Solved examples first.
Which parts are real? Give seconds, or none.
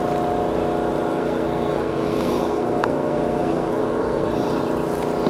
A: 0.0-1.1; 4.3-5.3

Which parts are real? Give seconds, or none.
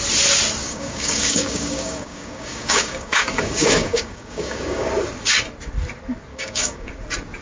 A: 0.0-0.6; 4.9-6.3; 6.9-7.4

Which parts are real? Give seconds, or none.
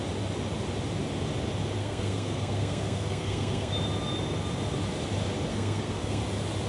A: 0.0-1.8; 3.7-5.5; 6.2-6.7